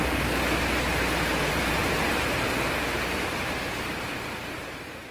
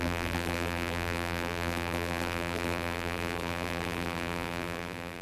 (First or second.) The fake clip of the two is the second